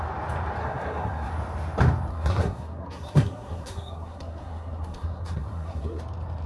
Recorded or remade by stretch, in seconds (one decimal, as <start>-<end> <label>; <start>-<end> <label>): 0.0-0.6 recorded; 0.6-1.3 remade; 1.3-2.1 recorded; 2.1-6.0 remade; 6.0-6.5 recorded